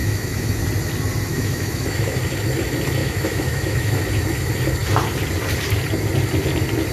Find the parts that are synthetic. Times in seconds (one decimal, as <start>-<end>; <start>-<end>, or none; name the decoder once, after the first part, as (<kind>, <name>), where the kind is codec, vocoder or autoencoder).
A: 0.0-0.6 (autoencoder, DAC-VAE); 1.3-2.2; 3.0-4.0